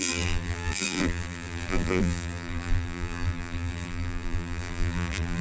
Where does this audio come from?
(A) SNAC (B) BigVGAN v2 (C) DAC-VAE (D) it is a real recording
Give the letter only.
B